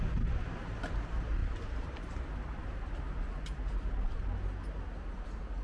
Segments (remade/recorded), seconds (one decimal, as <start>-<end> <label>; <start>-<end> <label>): 0.0-1.4 recorded; 1.4-2.3 remade; 2.3-5.6 recorded